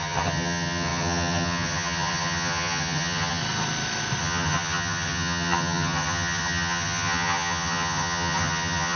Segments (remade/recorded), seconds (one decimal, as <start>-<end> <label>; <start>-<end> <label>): 0.0-3.4 remade; 3.4-4.2 recorded; 4.2-9.0 remade